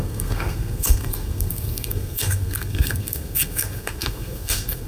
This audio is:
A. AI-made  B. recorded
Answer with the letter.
A